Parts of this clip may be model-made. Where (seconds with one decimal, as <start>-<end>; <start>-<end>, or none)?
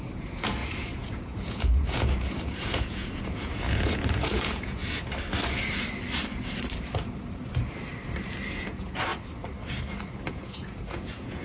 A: 0.0-4.8; 8.5-9.1; 10.3-11.4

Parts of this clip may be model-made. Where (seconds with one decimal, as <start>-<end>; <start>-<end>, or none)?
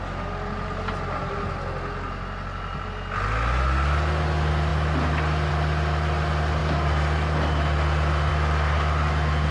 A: none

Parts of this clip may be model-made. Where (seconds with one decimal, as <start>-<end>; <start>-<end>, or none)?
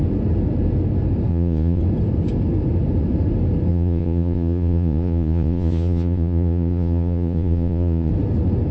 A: 1.3-1.8; 3.7-8.1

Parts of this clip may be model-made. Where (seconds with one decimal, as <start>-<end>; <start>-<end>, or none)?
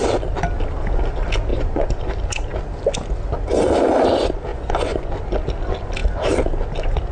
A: 1.5-2.0; 4.5-5.1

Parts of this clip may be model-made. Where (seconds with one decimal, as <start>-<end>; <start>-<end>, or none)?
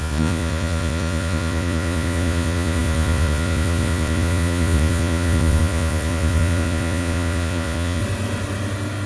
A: 0.0-8.0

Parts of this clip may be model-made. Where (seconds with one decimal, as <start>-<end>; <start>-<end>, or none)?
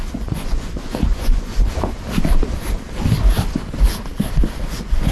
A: 0.0-1.5; 4.6-5.1